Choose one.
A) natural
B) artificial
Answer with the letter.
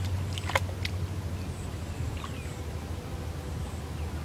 A